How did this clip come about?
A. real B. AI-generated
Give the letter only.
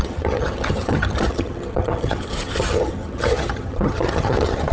B